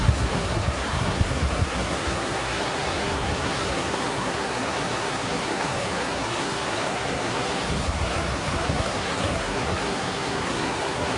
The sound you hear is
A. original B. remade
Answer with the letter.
B